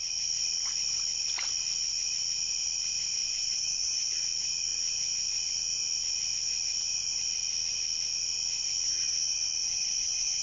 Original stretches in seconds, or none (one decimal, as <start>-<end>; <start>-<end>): 0.0-3.2; 4.1-9.6